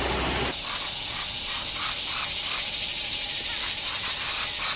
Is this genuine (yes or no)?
yes